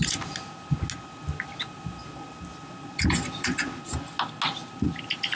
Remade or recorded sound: recorded